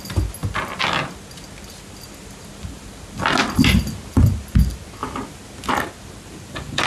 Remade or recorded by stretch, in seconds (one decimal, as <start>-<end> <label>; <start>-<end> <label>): 0.0-6.9 recorded